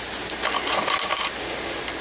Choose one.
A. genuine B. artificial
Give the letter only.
A